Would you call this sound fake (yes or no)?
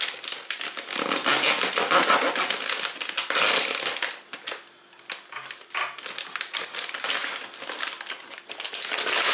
no